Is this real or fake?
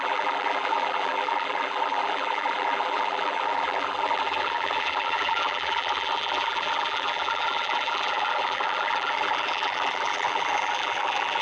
fake